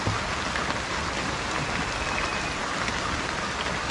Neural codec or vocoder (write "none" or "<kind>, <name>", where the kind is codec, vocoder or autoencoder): none